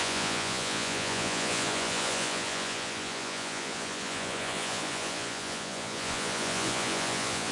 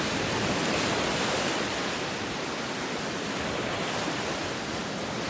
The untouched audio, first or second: second